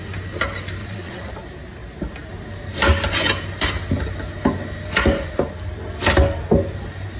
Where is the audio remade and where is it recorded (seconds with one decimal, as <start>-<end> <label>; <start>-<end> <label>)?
0.0-0.8 recorded; 0.8-1.3 remade; 1.3-7.2 recorded